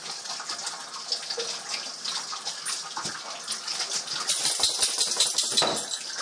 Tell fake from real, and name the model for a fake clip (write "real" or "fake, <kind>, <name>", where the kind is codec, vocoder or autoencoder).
real